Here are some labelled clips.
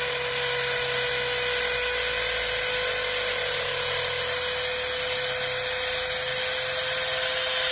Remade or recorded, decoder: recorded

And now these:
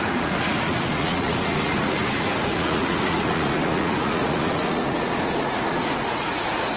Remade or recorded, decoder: remade, vocoder, Vocos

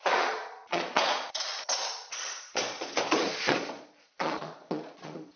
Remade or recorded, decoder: remade, vocoder, Vocos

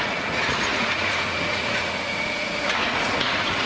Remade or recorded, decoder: remade, vocoder, Vocos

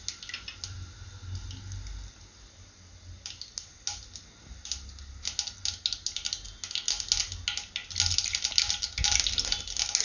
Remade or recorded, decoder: recorded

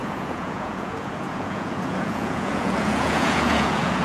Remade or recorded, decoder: remade, vocoder, Vocos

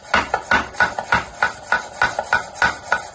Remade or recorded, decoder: recorded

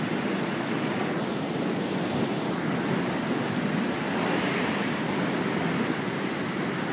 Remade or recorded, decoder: recorded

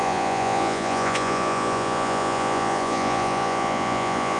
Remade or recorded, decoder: remade, vocoder, Vocos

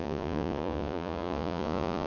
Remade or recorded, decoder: remade, vocoder, Vocos